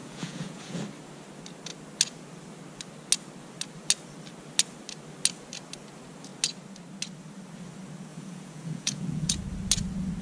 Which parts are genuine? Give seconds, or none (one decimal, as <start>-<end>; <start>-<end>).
0.8-8.1; 9.4-10.2